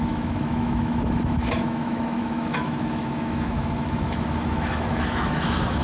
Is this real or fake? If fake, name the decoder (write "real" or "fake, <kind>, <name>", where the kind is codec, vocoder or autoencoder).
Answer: fake, autoencoder, DAC-VAE